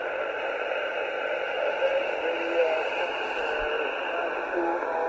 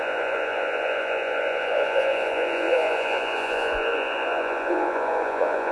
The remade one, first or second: second